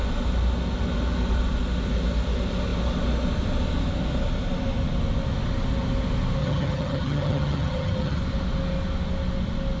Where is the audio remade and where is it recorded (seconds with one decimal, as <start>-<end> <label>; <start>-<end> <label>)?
0.0-6.4 recorded; 6.4-8.2 remade; 8.2-9.8 recorded